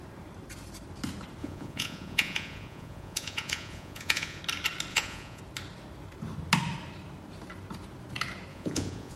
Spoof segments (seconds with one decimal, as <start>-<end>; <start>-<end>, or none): 1.4-4.4; 4.9-5.4; 8.5-9.2